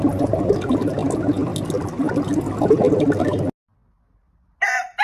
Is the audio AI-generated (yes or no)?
no